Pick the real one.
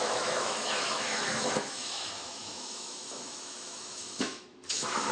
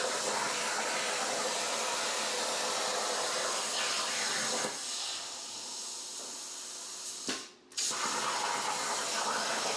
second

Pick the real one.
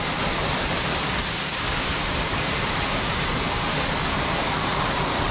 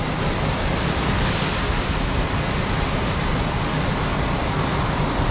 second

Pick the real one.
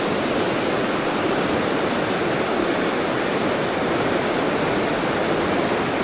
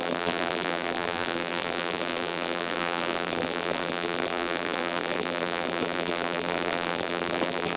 first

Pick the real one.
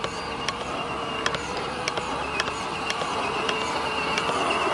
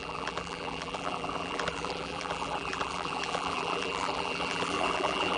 first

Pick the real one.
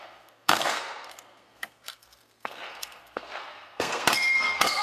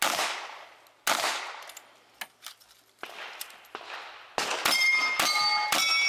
second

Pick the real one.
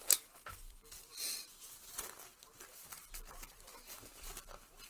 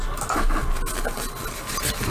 second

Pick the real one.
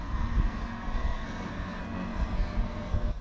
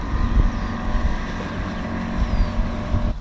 second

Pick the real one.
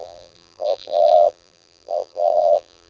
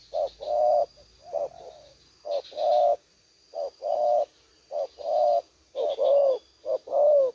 second